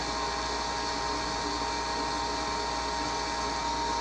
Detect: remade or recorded recorded